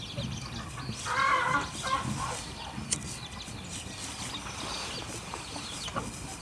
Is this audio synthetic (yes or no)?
no